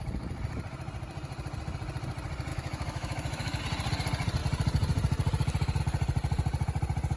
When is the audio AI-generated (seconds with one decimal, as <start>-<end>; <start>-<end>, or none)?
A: 2.5-3.6